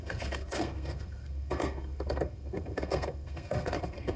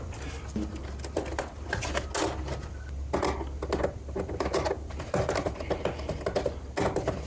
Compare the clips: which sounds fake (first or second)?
first